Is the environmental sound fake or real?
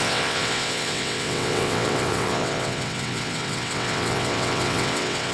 fake